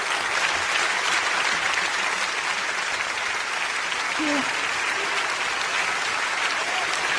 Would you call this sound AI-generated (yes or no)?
no